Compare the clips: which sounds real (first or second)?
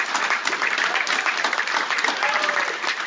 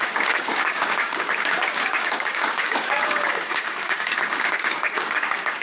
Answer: first